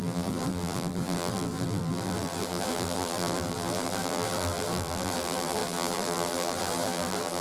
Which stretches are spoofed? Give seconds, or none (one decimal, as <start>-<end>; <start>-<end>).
0.0-7.4